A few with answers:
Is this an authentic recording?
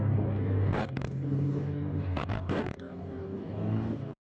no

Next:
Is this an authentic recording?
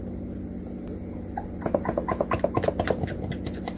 yes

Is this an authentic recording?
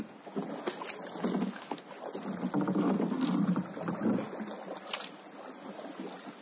yes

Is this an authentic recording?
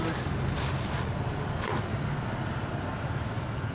yes